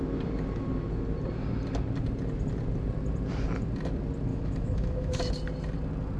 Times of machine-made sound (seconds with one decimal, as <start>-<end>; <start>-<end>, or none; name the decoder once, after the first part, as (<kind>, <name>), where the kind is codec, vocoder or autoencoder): 4.3-5.3 (autoencoder, DAC-VAE)